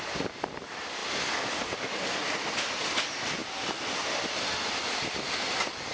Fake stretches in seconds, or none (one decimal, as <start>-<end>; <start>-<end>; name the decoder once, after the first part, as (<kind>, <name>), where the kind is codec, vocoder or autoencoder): none